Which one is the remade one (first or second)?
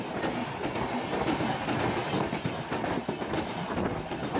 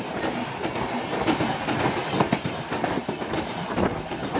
second